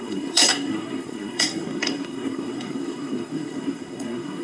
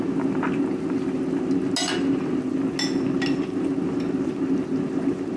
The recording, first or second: second